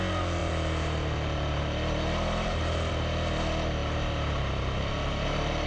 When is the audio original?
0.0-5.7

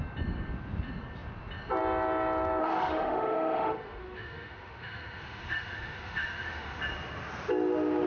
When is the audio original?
0.0-2.6; 6.8-8.1

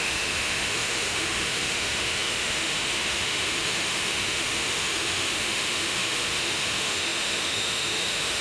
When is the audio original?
none

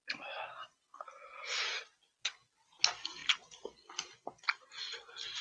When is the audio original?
0.0-5.4

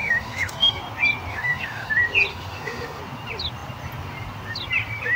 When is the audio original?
0.8-1.3; 1.9-2.3; 3.0-5.2

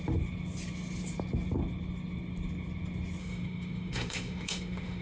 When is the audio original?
0.0-3.2

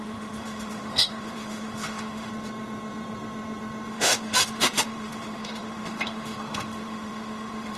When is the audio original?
2.3-3.9

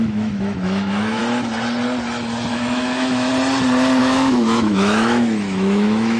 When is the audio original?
1.2-2.5; 3.3-4.0